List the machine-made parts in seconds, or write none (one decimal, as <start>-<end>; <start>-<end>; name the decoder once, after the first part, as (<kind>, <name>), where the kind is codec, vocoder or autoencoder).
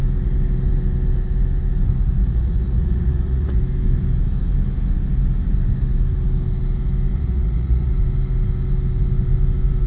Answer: 2.2-3.6 (vocoder, Vocos); 7.1-7.9